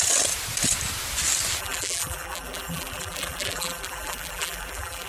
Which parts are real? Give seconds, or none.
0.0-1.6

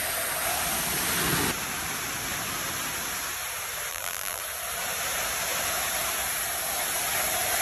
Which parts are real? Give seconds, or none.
0.0-3.9; 4.4-7.6

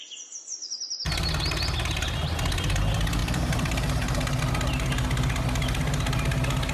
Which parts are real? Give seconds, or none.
0.0-3.2; 4.4-6.7

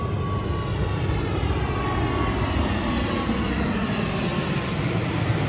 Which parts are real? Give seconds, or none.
1.6-4.3